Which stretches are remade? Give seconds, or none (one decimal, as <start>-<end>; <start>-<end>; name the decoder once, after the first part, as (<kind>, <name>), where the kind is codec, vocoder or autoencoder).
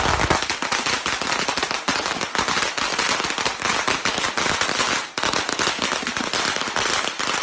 none